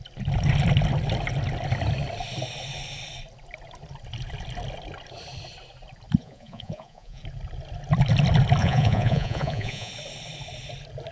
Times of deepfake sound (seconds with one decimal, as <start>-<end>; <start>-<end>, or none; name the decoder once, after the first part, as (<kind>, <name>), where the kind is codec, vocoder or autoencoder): 6.2-7.2 (vocoder, Vocos); 8.6-9.9